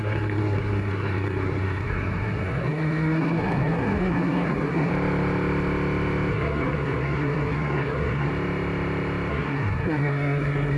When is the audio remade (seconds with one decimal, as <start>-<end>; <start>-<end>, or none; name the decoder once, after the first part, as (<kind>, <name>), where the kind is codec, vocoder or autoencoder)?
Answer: 0.0-4.9 (codec, SNAC); 6.3-8.3; 9.3-10.8